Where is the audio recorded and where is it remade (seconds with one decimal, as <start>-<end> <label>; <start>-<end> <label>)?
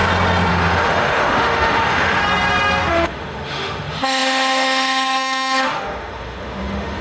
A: 0.0-0.5 recorded; 0.5-2.2 remade; 2.2-2.9 recorded; 2.9-7.0 remade